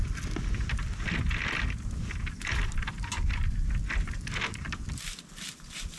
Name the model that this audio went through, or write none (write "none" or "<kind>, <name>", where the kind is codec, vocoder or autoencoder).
none